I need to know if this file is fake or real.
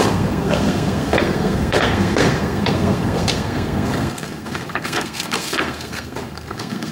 fake